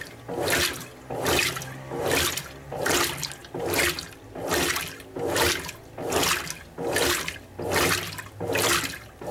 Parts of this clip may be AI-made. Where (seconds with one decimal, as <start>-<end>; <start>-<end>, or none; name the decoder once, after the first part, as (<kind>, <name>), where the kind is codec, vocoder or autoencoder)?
none